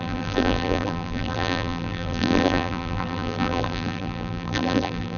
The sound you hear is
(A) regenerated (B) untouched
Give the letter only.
A